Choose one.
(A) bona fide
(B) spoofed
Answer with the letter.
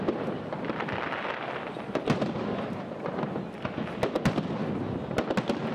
A